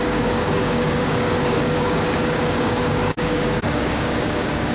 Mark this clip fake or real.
fake